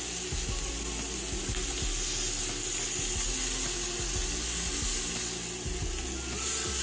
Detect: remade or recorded recorded